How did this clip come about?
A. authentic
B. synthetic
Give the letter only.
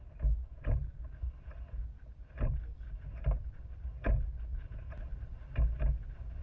A